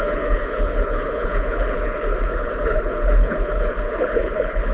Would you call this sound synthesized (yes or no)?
yes